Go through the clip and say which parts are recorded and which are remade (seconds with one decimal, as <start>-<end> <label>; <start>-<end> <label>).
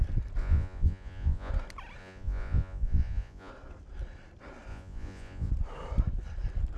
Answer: 0.0-0.4 recorded; 0.4-1.5 remade; 1.5-2.0 recorded; 2.0-3.5 remade; 3.5-4.7 recorded; 4.7-5.5 remade; 5.5-6.8 recorded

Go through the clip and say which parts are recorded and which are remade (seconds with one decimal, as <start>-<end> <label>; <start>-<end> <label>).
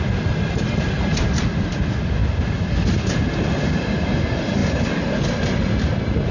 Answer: 0.0-6.3 recorded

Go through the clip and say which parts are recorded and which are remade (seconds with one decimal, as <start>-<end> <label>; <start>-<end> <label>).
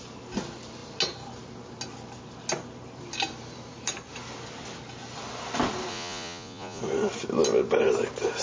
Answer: 0.0-5.9 recorded; 5.9-6.8 remade; 6.8-8.4 recorded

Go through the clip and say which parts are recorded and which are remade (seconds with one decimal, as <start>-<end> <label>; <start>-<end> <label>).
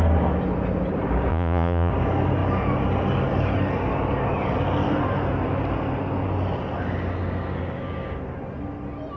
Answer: 0.0-1.3 recorded; 1.3-1.9 remade; 1.9-9.2 recorded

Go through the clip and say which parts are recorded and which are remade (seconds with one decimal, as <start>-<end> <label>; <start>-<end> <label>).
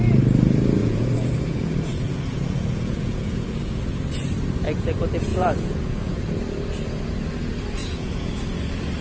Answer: 0.0-0.8 recorded; 0.8-3.7 remade; 3.7-5.3 recorded; 5.3-6.4 remade; 6.4-7.8 recorded; 7.8-8.4 remade; 8.4-9.0 recorded